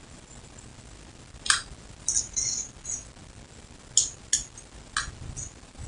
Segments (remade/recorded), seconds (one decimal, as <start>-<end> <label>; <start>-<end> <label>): 0.0-5.9 recorded